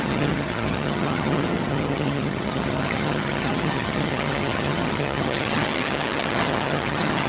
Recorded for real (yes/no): no